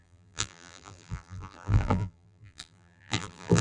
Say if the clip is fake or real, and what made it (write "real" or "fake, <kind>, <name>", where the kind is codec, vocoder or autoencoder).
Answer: fake, vocoder, BigVGAN v2